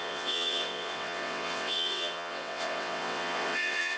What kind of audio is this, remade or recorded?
remade